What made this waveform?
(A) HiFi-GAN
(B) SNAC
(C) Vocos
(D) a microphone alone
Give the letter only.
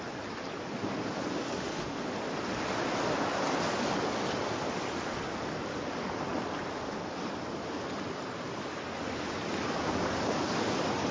D